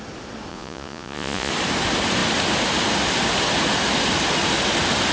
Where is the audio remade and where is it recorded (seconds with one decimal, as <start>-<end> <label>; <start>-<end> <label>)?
0.0-0.5 recorded; 0.5-1.5 remade; 1.5-5.1 recorded